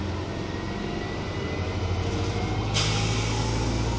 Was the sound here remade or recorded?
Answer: recorded